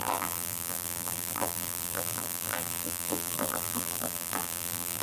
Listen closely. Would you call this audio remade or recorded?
remade